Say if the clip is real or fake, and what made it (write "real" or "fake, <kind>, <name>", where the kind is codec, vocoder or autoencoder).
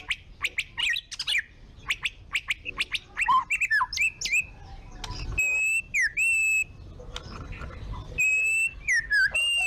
real